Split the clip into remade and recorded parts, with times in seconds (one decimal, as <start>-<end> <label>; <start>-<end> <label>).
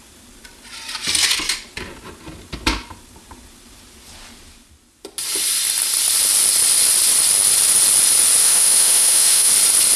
0.0-8.4 recorded; 8.4-9.5 remade; 9.5-10.0 recorded